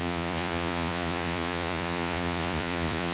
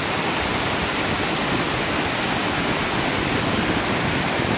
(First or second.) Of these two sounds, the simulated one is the first